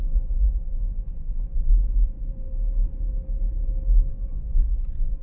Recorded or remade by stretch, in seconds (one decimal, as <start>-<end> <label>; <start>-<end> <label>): 0.0-1.7 remade; 1.7-4.1 recorded; 4.1-5.2 remade

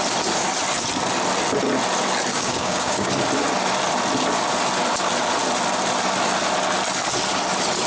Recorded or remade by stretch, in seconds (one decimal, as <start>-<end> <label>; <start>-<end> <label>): 0.0-2.3 recorded; 2.3-3.1 remade; 3.1-7.9 recorded

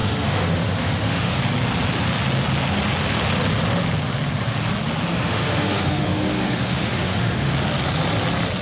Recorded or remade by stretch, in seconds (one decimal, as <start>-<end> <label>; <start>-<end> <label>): 0.0-1.4 remade; 1.4-5.1 recorded; 5.1-7.5 remade; 7.5-8.6 recorded

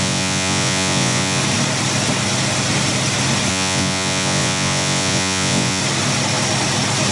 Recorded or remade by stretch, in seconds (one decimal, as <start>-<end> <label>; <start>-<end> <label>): 0.0-1.4 remade; 1.4-3.5 recorded; 3.5-5.8 remade; 5.8-7.1 recorded

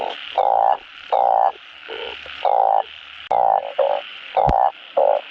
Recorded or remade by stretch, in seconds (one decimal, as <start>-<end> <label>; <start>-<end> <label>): 0.0-0.9 recorded; 0.9-1.6 remade; 1.6-4.1 recorded; 4.1-4.7 remade; 4.7-5.3 recorded